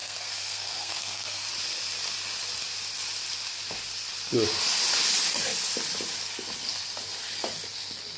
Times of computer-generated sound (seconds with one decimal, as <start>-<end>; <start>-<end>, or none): 0.0-1.5